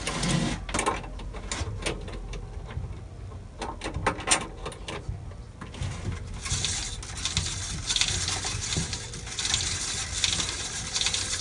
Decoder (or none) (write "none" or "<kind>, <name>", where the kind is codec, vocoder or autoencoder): none